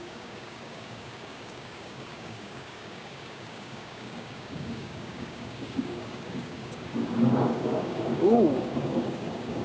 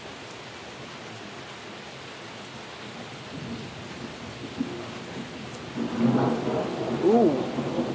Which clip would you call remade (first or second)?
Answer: first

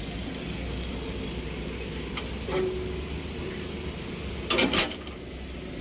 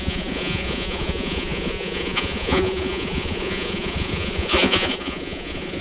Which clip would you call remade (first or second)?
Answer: second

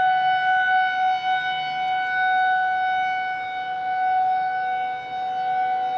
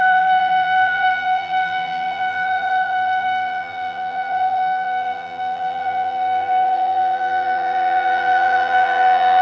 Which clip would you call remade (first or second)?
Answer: second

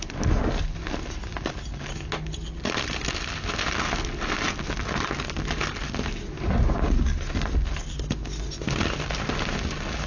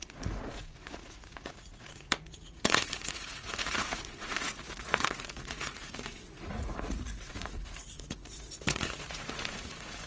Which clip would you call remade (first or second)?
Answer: second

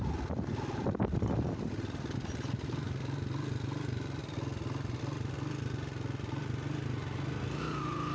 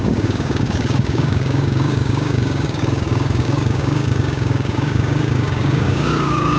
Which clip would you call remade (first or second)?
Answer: second